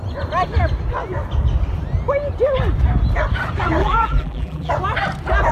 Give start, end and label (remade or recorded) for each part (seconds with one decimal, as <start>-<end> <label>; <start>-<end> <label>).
0.0-3.8 recorded; 3.8-4.7 remade; 4.7-5.5 recorded